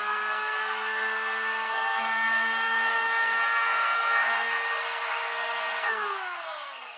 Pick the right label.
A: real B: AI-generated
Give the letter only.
B